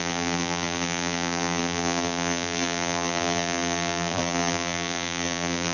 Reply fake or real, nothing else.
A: fake